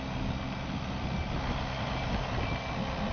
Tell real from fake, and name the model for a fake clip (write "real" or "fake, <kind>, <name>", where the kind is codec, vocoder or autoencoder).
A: real